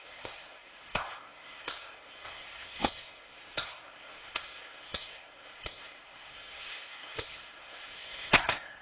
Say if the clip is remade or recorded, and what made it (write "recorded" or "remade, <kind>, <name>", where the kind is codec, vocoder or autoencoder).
remade, codec, SNAC